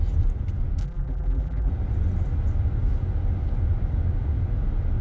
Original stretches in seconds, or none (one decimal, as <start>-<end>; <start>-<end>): 0.0-0.8; 1.7-5.0